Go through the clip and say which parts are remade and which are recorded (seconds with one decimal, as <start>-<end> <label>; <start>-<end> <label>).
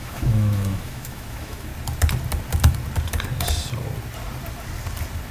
0.0-1.7 remade; 1.7-5.3 recorded